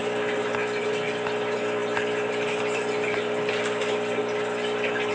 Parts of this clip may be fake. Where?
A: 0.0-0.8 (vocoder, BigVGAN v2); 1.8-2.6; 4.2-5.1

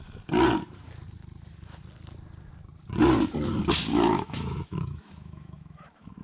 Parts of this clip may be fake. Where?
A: 3.9-6.2 (autoencoder, DAC-VAE)

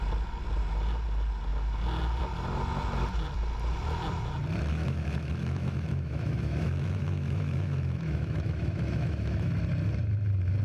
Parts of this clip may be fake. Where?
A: 4.7-9.5 (autoencoder, DAC-VAE)

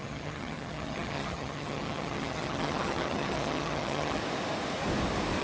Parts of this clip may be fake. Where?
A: 0.0-4.2 (vocoder, HiFi-GAN)

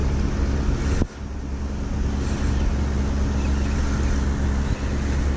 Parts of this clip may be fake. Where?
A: none

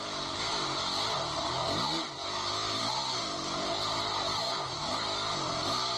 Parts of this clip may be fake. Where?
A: 2.2-2.8 (autoencoder, DAC-VAE); 4.3-4.9